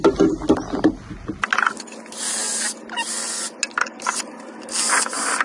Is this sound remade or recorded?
recorded